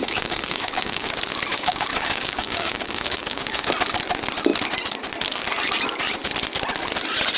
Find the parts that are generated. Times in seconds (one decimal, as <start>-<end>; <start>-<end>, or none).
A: 0.0-1.1; 1.5-3.7

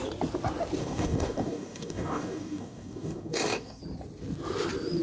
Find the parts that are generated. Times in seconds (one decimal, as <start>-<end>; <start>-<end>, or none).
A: 0.8-3.8